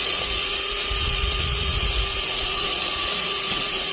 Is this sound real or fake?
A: fake